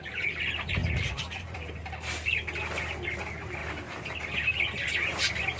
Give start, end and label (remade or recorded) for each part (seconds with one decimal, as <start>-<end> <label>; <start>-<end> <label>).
0.0-0.8 recorded; 0.8-1.6 remade; 1.6-5.6 recorded